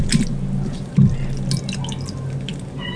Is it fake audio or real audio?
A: real